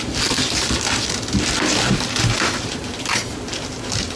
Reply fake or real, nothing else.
real